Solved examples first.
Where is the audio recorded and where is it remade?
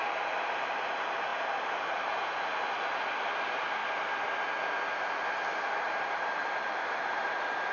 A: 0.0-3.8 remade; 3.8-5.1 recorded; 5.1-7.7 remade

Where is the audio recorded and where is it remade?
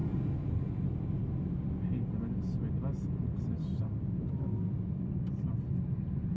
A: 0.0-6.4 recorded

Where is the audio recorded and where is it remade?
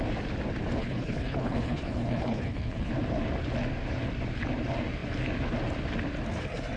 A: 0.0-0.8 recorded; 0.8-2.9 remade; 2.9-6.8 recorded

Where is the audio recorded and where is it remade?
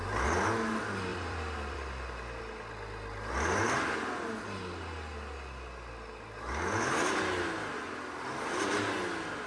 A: 0.0-1.1 recorded; 1.1-2.4 remade; 2.4-9.5 recorded